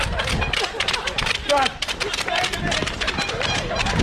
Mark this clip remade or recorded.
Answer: recorded